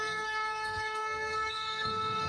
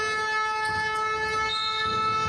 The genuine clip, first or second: second